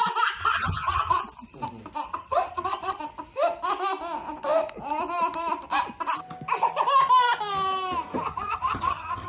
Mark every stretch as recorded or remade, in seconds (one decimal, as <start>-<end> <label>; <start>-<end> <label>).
0.0-0.4 recorded; 0.4-1.2 remade; 1.2-2.1 recorded; 2.1-3.0 remade; 3.0-8.3 recorded; 8.3-9.3 remade

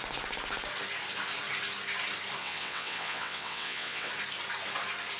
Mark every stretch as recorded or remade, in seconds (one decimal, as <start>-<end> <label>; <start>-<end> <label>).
0.0-2.4 recorded; 2.4-4.1 remade; 4.1-5.2 recorded

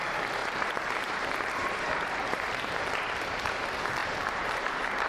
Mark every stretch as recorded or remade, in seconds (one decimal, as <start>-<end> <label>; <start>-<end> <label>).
0.0-0.4 recorded; 0.4-3.5 remade; 3.5-4.0 recorded; 4.0-5.1 remade

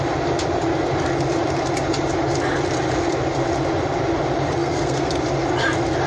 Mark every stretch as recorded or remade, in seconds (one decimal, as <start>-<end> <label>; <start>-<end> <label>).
0.0-4.6 recorded; 4.6-5.1 remade; 5.1-6.1 recorded